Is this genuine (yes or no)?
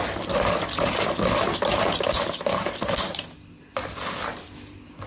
yes